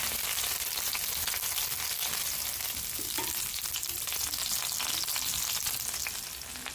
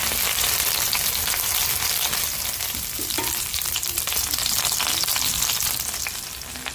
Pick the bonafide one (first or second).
first